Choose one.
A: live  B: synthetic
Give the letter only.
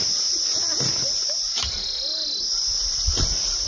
A